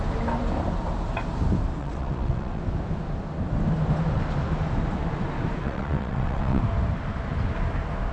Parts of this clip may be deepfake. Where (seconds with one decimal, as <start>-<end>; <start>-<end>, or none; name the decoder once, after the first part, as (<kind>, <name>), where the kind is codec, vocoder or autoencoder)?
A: 1.8-2.6 (vocoder, WaveNeXt); 5.6-6.6